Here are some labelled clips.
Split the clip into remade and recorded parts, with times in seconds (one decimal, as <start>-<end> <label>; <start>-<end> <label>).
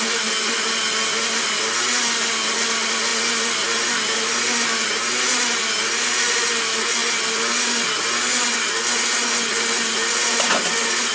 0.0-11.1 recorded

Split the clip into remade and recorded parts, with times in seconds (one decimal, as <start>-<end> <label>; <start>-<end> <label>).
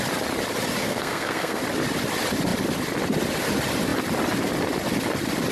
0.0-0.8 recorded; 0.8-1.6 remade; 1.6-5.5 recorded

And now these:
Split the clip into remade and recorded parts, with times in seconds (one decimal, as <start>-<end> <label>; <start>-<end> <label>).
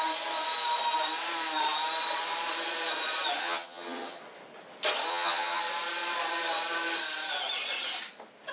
0.0-3.4 recorded; 3.4-4.2 remade; 4.2-5.1 recorded; 5.1-5.6 remade; 5.6-8.5 recorded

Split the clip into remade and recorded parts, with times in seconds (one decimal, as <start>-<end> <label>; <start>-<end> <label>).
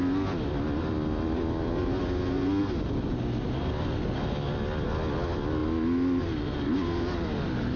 0.0-7.8 recorded